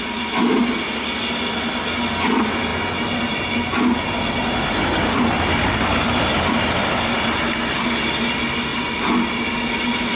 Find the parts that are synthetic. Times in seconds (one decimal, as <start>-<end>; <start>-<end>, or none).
8.7-10.2